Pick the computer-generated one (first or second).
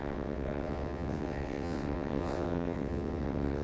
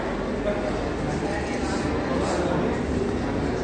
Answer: first